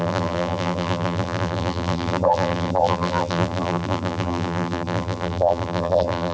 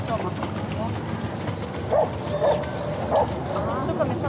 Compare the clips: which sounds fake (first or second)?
first